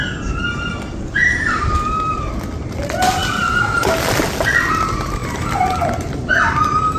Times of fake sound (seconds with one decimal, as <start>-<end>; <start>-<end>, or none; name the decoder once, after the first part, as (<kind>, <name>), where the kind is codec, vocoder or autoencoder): none